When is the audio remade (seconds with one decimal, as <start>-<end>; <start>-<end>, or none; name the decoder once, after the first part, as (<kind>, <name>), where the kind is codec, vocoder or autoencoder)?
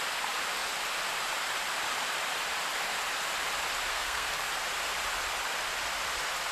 3.9-4.5 (codec, SNAC)